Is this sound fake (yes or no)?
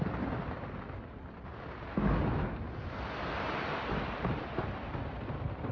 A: no